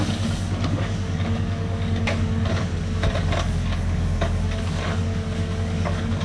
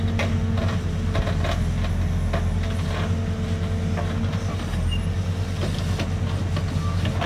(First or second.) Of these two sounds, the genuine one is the second